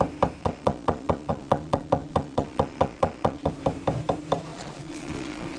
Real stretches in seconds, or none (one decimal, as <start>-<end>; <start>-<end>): 0.0-0.4; 3.5-4.5